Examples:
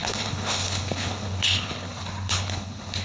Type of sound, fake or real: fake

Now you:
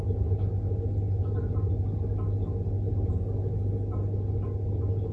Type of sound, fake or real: real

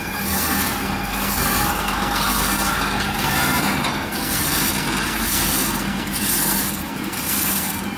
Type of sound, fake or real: fake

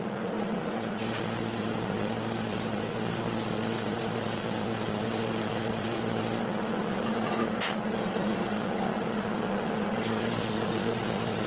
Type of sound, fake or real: fake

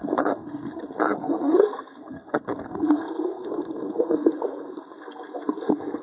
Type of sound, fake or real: fake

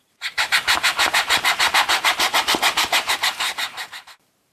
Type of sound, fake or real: fake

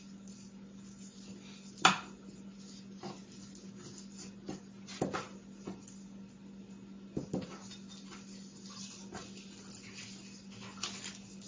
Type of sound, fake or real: real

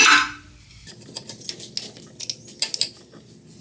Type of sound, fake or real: real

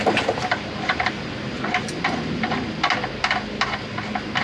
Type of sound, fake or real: real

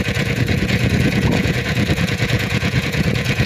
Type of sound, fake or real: fake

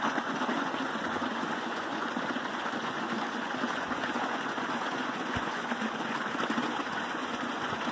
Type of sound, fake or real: fake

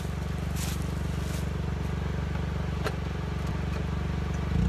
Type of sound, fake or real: real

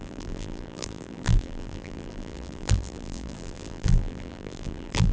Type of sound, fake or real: fake